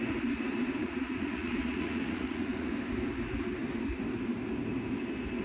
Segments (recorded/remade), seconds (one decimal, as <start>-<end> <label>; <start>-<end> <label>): 0.0-0.8 recorded; 0.8-2.7 remade; 2.7-5.4 recorded